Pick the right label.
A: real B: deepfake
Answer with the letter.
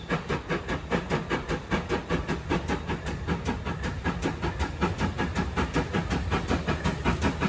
A